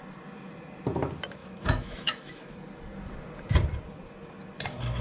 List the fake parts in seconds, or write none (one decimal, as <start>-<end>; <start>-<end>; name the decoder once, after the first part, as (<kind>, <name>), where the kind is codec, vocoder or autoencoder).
1.4-2.5 (autoencoder, DAC-VAE)